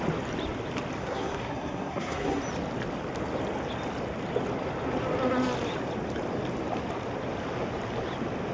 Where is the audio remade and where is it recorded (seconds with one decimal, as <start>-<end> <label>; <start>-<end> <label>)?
0.0-1.0 recorded; 1.0-2.4 remade; 2.4-8.5 recorded